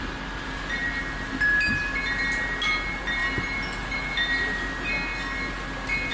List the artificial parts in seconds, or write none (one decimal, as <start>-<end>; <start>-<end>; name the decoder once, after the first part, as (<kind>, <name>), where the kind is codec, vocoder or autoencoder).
none